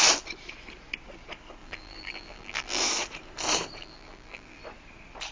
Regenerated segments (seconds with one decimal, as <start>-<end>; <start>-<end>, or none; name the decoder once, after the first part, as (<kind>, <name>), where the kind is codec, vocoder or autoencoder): 1.6-2.8 (vocoder, BigVGAN v2); 3.8-4.6